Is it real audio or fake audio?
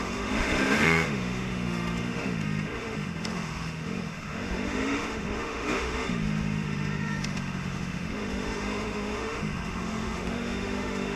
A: fake